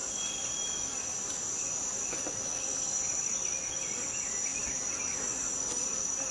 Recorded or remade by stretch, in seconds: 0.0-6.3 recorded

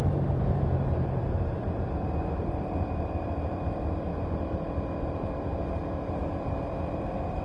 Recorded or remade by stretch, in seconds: 0.0-4.1 remade; 4.1-4.8 recorded; 4.8-5.8 remade; 5.8-6.3 recorded; 6.3-7.4 remade

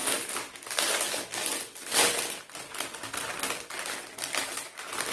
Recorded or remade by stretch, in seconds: 0.0-5.1 recorded

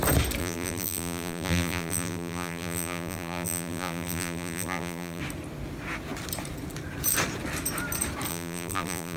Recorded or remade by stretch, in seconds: 0.0-0.4 recorded; 0.4-5.2 remade; 5.2-8.3 recorded; 8.3-9.2 remade

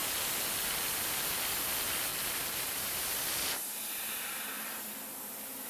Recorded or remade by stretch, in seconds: 0.0-2.1 recorded; 2.1-3.1 remade; 3.1-5.7 recorded

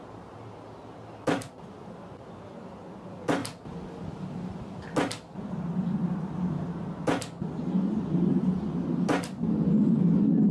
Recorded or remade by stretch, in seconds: 0.0-10.5 recorded

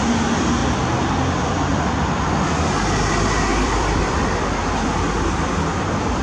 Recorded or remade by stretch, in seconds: 0.0-3.5 recorded; 3.5-4.0 remade; 4.0-6.2 recorded